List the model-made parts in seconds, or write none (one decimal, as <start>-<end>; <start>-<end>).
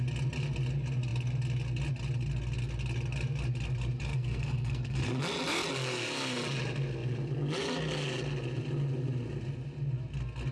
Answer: 4.1-5.0